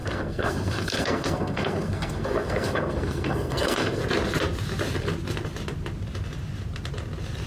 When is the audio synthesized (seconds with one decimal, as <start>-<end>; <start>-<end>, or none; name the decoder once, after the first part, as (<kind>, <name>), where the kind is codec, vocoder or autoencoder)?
0.0-4.0 (codec, SNAC)